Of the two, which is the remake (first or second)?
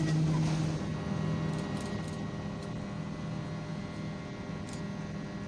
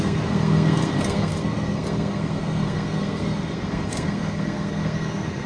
second